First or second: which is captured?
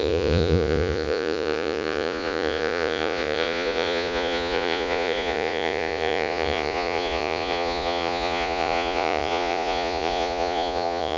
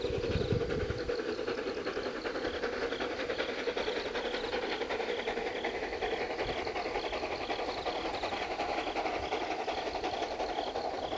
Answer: second